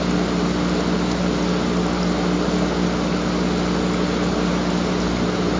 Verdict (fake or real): real